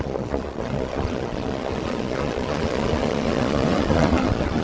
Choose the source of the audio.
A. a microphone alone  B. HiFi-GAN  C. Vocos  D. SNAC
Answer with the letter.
C